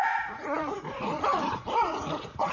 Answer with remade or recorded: remade